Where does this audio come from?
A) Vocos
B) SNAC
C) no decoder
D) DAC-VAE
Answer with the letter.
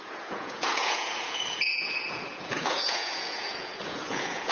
A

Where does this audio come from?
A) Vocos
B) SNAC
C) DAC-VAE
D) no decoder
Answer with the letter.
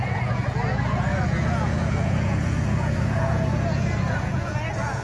A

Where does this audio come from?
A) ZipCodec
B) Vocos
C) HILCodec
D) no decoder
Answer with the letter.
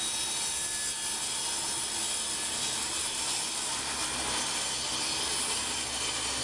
D